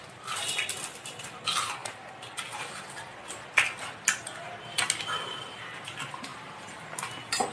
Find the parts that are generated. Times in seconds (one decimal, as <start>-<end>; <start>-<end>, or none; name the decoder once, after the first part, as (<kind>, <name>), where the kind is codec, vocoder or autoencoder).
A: 1.8-2.8 (vocoder, BigVGAN v2); 6.3-7.0